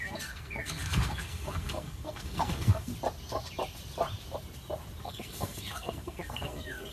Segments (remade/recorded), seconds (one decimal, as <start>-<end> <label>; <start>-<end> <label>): 0.0-2.9 remade; 2.9-5.0 recorded; 5.0-6.9 remade